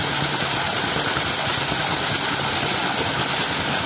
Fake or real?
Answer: real